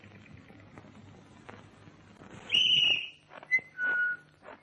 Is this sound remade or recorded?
recorded